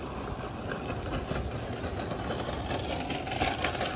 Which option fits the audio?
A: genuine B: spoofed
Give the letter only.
A